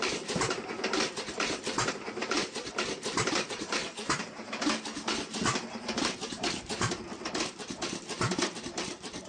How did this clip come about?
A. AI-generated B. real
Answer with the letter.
A